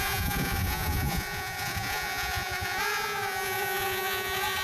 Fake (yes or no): yes